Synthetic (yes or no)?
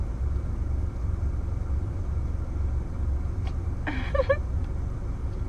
yes